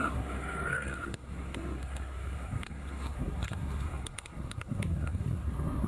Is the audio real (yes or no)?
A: no